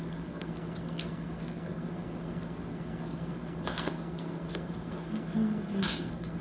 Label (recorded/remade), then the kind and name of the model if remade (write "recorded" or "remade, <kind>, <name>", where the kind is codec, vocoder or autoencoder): remade, codec, SNAC